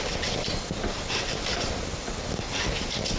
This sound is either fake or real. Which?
real